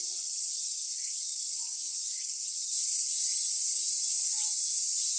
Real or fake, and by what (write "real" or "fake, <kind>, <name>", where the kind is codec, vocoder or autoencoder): fake, vocoder, Vocos